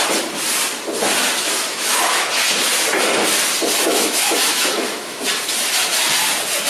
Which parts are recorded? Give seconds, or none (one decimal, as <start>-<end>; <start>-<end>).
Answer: 0.0-1.7; 2.3-3.9; 5.2-6.7